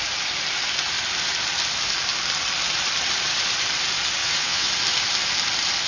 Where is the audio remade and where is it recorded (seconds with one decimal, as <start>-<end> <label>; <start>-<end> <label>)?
0.0-4.2 recorded; 4.2-4.7 remade; 4.7-5.9 recorded